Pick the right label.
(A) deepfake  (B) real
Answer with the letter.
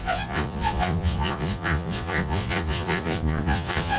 A